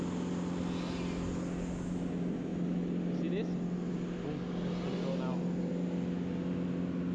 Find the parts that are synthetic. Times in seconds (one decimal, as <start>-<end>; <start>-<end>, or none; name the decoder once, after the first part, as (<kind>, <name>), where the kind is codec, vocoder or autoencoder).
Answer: none